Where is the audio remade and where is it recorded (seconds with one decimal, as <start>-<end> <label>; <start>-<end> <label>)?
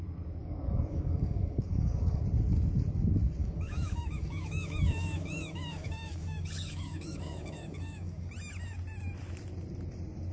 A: 0.0-0.4 recorded; 0.4-2.2 remade; 2.2-3.4 recorded; 3.4-8.3 remade; 8.3-10.3 recorded